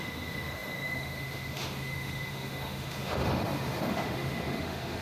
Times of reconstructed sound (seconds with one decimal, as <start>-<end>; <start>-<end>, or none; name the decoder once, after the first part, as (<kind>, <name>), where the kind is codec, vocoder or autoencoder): 0.0-5.0 (autoencoder, DAC-VAE)